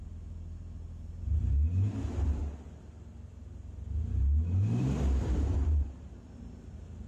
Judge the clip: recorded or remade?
recorded